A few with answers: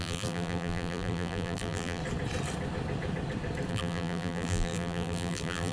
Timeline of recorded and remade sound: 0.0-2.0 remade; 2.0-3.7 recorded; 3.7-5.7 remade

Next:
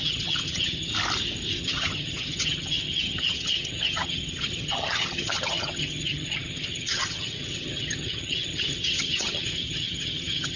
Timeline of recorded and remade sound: 0.0-0.9 remade; 0.9-1.6 recorded; 1.6-10.6 remade

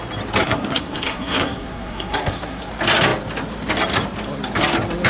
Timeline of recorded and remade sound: 0.0-0.4 recorded; 0.4-2.7 remade; 2.7-5.1 recorded

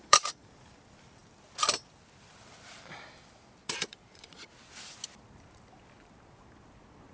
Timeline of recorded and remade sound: 0.0-0.5 remade; 0.5-3.6 recorded; 3.6-4.5 remade; 4.5-7.1 recorded

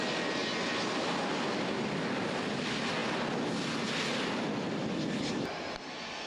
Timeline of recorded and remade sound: 0.0-6.3 recorded